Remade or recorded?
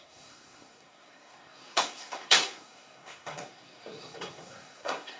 remade